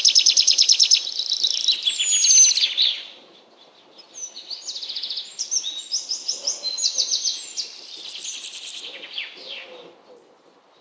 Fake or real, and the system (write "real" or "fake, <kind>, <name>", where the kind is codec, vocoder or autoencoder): real